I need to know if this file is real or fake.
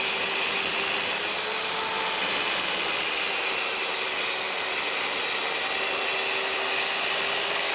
real